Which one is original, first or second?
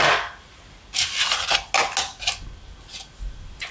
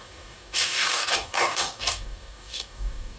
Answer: first